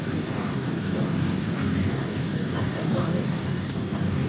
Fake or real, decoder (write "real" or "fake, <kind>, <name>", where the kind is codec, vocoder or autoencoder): fake, codec, DAC